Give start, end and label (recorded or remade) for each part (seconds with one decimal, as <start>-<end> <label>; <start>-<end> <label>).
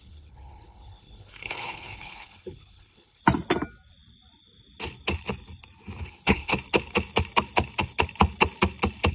0.0-3.2 remade; 3.2-6.0 recorded; 6.0-6.5 remade; 6.5-9.1 recorded